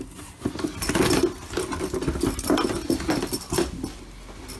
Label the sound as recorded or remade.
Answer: recorded